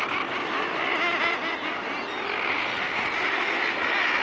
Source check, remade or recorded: recorded